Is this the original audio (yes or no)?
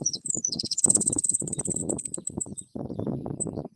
no